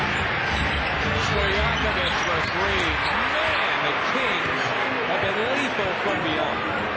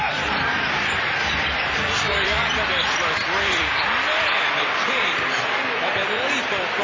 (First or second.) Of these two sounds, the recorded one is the first